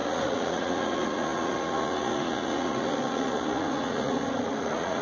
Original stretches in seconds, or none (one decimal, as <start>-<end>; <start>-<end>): none